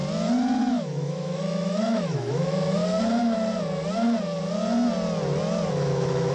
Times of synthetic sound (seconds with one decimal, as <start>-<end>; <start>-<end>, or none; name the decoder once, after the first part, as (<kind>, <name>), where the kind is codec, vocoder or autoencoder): 0.6-2.8 (autoencoder, DAC-VAE); 5.7-6.3